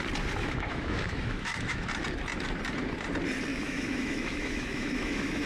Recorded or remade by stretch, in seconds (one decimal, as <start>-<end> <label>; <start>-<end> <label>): 0.0-0.4 recorded; 0.4-1.9 remade; 1.9-3.5 recorded; 3.5-5.5 remade